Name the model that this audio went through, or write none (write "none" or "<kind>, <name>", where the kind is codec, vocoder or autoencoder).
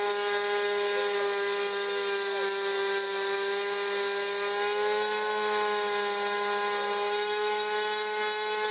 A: none